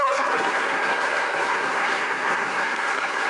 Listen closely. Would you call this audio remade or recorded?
remade